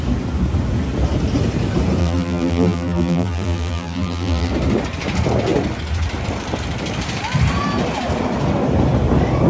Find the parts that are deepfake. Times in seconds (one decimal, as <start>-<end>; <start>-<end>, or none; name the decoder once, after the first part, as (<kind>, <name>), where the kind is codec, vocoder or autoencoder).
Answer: 2.0-4.5 (vocoder, BigVGAN v2)